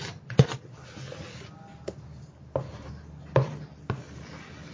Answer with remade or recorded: recorded